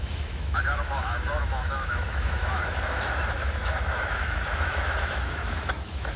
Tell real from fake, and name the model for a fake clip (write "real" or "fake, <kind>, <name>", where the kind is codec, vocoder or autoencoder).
fake, autoencoder, DAC-VAE